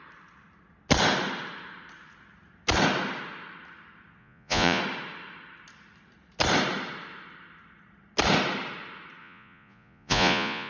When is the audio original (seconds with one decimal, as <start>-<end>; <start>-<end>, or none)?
0.0-4.2; 4.8-9.2